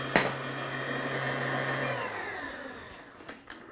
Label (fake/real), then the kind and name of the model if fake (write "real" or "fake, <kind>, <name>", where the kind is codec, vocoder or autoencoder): real